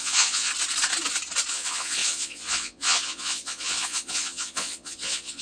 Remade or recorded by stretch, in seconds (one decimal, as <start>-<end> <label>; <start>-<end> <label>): 0.0-0.5 remade; 0.5-1.5 recorded; 1.5-5.4 remade